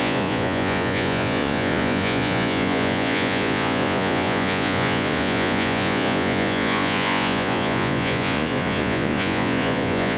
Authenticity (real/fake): fake